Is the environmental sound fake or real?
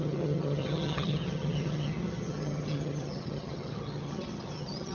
fake